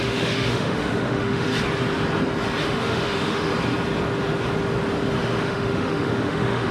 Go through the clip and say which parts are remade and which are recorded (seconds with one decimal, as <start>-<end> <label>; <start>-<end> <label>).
0.0-1.5 remade; 1.5-2.6 recorded; 2.6-3.5 remade; 3.5-5.4 recorded; 5.4-6.7 remade